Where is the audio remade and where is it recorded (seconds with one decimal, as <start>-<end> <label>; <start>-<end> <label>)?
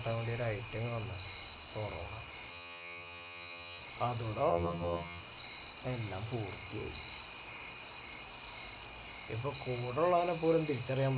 0.0-2.5 recorded; 2.5-3.8 remade; 3.8-4.5 recorded; 4.5-5.2 remade; 5.2-11.2 recorded